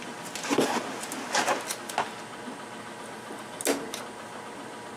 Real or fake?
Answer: real